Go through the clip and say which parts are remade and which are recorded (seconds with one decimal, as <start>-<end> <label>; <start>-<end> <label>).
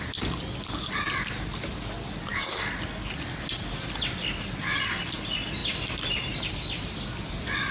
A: 0.0-7.7 recorded